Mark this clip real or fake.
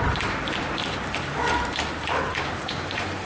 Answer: fake